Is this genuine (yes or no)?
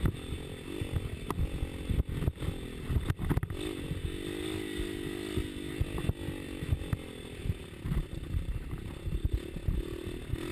yes